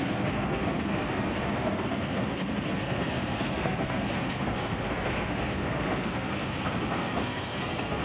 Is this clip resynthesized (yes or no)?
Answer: yes